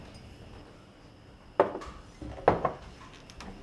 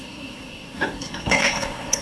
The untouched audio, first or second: first